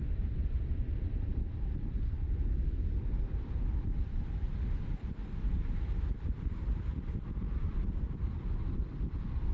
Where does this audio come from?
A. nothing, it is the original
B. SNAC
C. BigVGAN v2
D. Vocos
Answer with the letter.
A